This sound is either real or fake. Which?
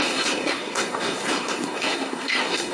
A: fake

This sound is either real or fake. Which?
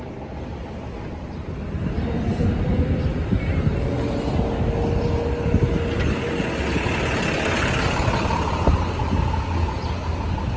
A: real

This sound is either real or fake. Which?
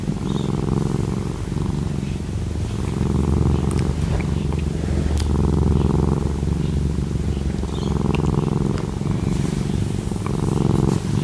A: real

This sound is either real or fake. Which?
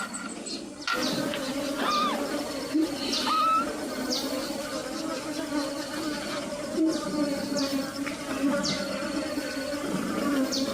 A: real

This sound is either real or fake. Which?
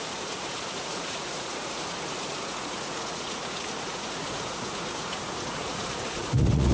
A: fake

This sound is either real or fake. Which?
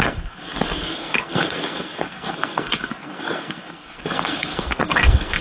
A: fake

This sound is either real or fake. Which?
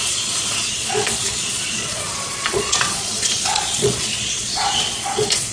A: fake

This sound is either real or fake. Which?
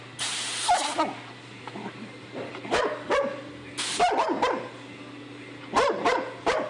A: real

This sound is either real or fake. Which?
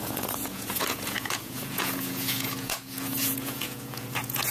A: fake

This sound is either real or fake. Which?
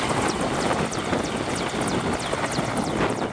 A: real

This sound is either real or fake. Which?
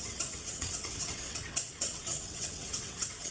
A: fake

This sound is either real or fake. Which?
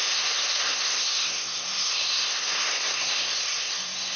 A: fake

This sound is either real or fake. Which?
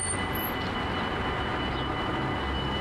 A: real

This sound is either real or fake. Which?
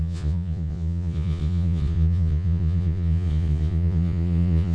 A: fake